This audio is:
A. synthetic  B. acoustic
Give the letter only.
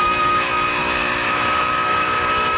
A